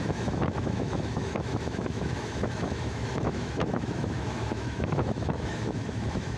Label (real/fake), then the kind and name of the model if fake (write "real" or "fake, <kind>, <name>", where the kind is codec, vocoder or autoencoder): fake, autoencoder, DAC-VAE